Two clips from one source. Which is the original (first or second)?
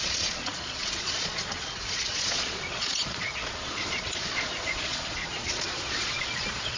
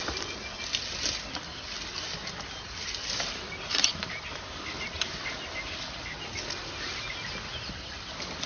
second